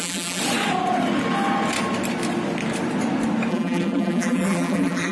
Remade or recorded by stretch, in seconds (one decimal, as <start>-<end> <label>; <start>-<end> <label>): 0.0-0.4 remade; 0.4-3.5 recorded; 3.5-5.1 remade